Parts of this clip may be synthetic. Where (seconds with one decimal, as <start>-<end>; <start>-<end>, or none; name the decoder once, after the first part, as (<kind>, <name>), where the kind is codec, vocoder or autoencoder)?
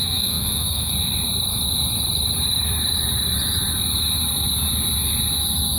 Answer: 0.0-0.9 (codec, SNAC)